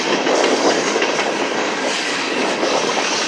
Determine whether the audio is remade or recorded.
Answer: remade